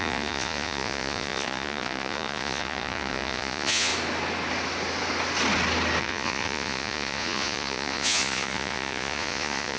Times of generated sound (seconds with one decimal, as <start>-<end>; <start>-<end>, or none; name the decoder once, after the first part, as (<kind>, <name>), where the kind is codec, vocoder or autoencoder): 0.0-3.9 (vocoder, Vocos); 6.0-9.8